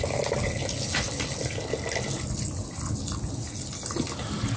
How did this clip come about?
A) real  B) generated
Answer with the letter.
A